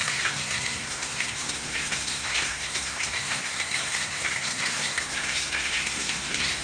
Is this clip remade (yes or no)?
yes